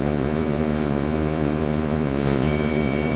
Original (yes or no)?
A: no